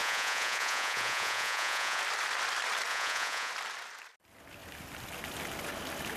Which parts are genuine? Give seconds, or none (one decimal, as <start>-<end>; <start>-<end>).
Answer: 2.0-2.9; 3.5-6.2